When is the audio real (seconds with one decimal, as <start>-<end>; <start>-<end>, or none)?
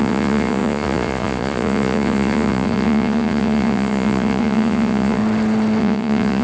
5.2-5.8